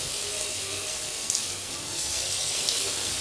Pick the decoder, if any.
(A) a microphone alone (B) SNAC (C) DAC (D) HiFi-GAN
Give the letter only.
B